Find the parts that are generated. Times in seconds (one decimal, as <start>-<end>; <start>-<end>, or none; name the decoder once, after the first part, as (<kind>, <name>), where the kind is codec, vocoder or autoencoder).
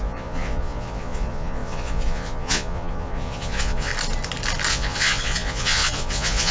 0.0-3.9 (vocoder, Vocos); 4.7-6.5